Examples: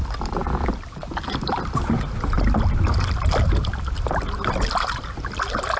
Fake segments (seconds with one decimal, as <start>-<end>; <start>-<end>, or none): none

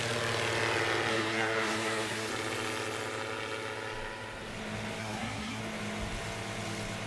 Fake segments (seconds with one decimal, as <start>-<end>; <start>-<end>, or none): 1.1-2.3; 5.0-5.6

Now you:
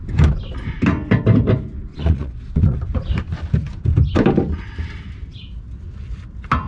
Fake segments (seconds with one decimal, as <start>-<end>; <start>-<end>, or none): 1.9-2.8